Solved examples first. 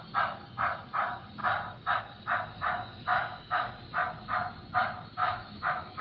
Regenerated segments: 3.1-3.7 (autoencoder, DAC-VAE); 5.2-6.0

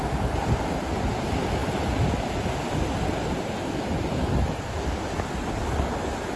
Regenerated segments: none

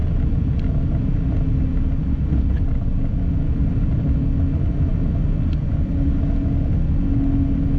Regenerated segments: none

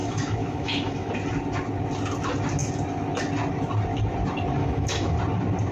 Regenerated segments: 0.0-1.1 (autoencoder, DAC-VAE); 4.6-5.2

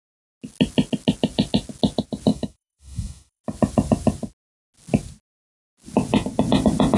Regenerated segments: 2.3-3.4 (autoencoder, DAC-VAE)

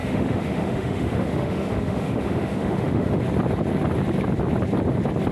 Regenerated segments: 0.0-3.2 (autoencoder, DAC-VAE)

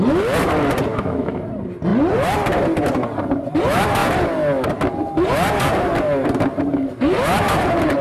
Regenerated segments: 0.9-1.4 (autoencoder, DAC-VAE)

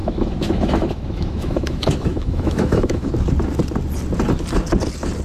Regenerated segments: 0.0-3.1 (autoencoder, DAC-VAE)